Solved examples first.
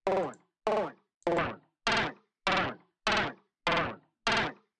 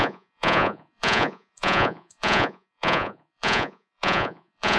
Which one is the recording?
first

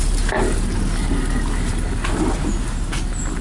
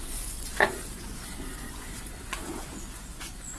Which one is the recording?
first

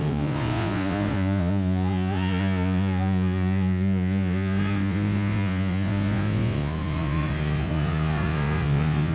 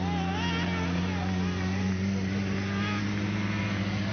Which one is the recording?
second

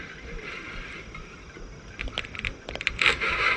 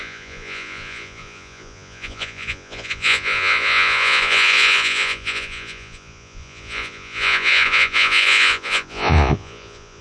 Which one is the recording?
first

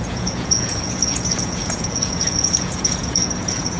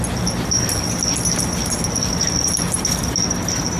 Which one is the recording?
second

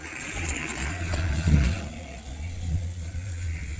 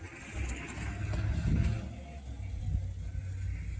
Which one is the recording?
second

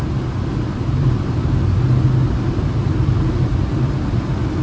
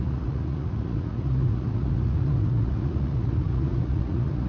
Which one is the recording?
first